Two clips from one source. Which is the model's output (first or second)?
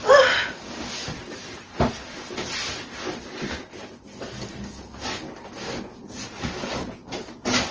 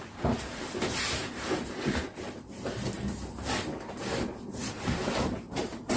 second